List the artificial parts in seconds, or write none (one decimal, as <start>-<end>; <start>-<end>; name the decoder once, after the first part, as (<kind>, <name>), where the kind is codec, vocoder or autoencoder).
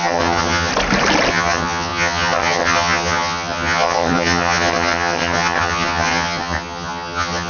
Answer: 0.0-0.7 (vocoder, HiFi-GAN); 1.3-7.5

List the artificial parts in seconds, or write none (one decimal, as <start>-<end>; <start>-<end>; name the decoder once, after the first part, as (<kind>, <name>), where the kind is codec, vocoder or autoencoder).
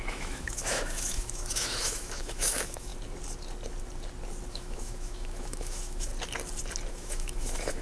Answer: 0.0-2.9 (autoencoder, DAC-VAE); 4.5-6.1; 6.9-7.8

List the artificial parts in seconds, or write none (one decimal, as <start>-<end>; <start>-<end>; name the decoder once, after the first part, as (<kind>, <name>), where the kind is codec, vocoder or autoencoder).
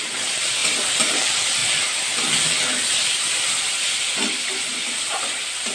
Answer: 0.0-1.6 (vocoder, BigVGAN v2); 4.9-5.7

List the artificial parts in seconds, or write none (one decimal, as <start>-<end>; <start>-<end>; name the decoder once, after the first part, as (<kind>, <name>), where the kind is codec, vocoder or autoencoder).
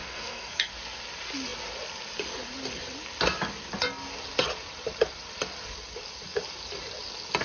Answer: 0.0-0.7 (codec, SNAC)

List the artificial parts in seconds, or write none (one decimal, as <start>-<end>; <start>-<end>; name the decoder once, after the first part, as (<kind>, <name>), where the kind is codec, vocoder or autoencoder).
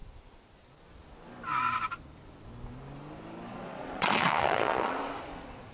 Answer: 3.5-5.7 (vocoder, Vocos)